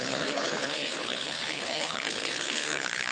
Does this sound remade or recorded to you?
remade